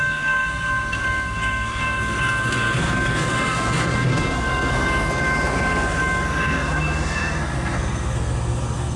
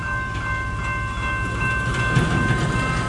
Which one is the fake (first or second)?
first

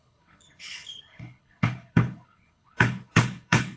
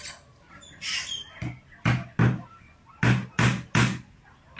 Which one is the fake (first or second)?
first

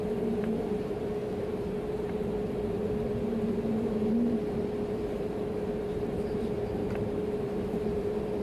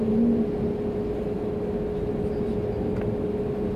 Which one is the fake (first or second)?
first